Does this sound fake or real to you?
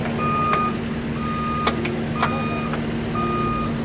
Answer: real